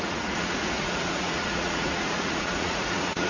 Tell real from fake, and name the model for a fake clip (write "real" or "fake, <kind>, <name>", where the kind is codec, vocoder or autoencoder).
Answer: fake, vocoder, Vocos